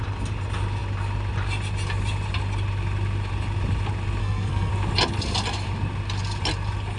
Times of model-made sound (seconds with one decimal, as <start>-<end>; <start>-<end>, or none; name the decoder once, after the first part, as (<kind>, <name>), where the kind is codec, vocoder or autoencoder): 4.2-4.7 (codec, SNAC)